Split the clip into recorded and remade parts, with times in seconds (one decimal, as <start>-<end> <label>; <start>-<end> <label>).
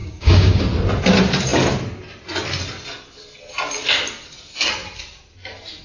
0.0-0.6 remade; 0.6-5.8 recorded